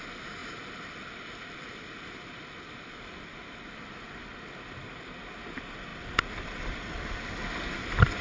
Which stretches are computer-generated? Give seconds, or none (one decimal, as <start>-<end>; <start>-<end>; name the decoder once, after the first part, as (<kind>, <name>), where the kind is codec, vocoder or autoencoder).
none